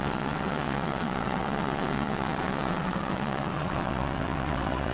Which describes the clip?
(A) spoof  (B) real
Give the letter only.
A